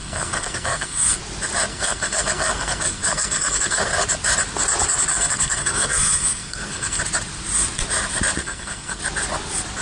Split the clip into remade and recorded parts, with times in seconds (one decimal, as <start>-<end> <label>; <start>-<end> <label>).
0.0-1.2 remade; 1.2-1.7 recorded; 1.7-3.9 remade; 3.9-5.1 recorded; 5.1-7.0 remade; 7.0-8.4 recorded; 8.4-9.0 remade; 9.0-9.8 recorded